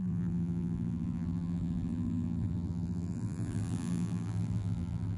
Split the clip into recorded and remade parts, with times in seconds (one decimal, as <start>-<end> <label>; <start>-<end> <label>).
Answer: 0.0-5.2 remade